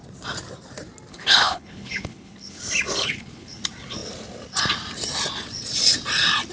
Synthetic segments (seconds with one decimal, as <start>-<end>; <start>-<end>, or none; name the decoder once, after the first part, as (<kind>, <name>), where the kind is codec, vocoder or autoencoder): 1.1-2.6 (codec, HILCodec); 3.0-3.6